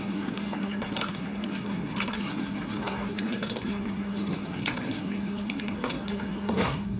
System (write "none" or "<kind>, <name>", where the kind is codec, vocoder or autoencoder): codec, SNAC